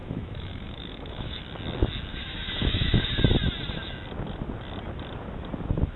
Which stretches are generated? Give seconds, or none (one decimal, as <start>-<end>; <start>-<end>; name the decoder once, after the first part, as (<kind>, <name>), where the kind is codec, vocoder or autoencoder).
0.0-1.4 (autoencoder, DAC-VAE); 2.1-3.1